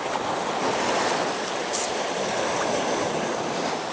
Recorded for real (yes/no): yes